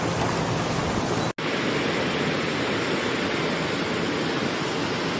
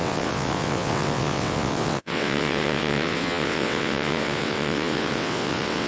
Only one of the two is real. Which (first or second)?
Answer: first